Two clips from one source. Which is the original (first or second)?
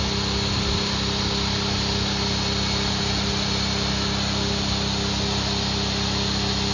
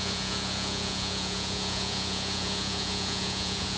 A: first